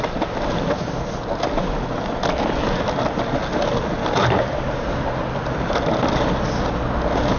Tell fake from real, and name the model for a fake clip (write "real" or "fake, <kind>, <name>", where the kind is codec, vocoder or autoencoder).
real